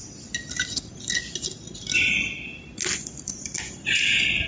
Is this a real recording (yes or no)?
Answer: yes